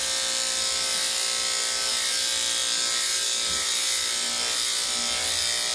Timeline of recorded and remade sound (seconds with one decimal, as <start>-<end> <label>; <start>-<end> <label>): 0.0-5.7 recorded